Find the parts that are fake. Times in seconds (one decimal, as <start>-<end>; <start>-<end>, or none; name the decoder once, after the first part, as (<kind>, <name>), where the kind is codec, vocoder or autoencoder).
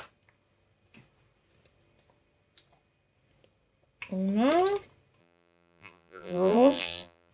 5.2-7.3 (vocoder, BigVGAN v2)